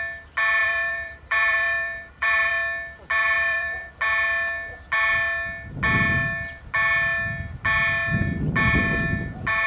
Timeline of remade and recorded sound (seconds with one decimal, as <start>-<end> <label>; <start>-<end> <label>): 0.0-0.6 recorded; 0.6-2.5 remade; 2.5-3.2 recorded; 3.2-3.9 remade; 3.9-9.7 recorded